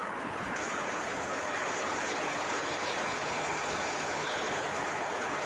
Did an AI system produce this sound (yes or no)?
yes